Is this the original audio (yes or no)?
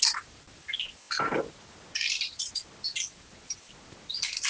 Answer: yes